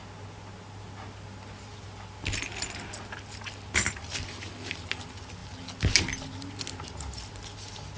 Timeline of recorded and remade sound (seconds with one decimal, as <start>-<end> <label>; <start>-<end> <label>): 0.0-8.0 recorded